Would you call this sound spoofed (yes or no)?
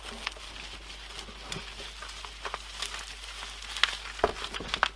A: no